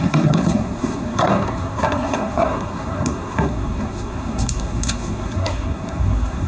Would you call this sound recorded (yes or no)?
no